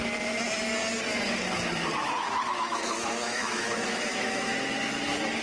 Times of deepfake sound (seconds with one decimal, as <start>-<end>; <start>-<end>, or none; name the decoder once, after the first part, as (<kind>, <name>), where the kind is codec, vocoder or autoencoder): 2.0-4.5 (autoencoder, DAC-VAE)